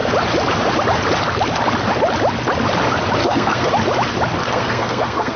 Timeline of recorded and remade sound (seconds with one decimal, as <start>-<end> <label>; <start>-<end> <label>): 0.0-3.2 recorded; 3.2-3.7 remade; 3.7-4.4 recorded; 4.4-5.4 remade